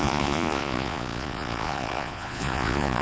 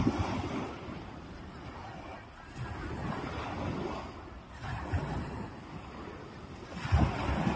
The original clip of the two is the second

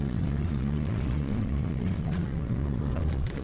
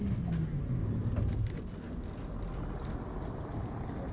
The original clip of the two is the second